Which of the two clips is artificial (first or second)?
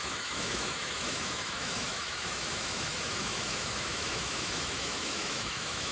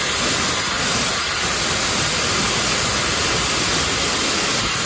first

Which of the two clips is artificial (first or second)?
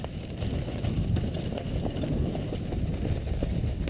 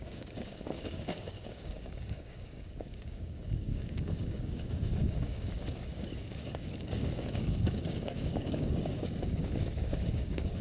second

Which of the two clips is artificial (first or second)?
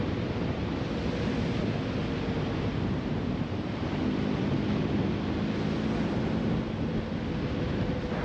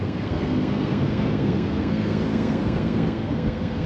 second